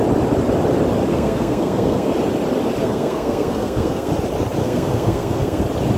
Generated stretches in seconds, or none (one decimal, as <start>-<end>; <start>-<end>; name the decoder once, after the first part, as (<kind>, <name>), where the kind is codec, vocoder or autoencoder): 1.1-2.1 (codec, SNAC); 2.8-4.1; 4.6-5.6